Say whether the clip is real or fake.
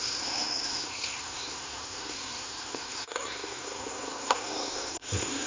fake